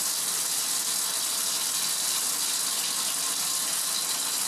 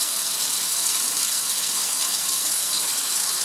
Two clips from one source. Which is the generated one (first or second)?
second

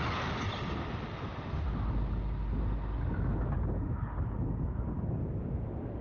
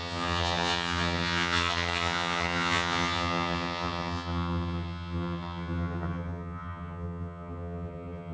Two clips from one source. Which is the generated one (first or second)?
second